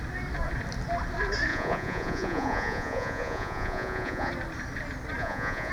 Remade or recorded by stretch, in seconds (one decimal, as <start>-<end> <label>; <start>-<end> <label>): 0.0-1.5 recorded; 1.5-4.3 remade; 4.3-5.2 recorded; 5.2-5.7 remade